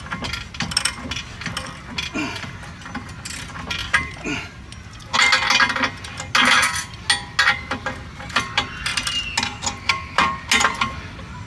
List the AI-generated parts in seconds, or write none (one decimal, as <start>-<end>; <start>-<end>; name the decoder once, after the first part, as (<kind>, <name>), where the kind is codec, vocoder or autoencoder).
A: none